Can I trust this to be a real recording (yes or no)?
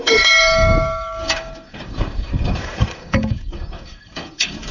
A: no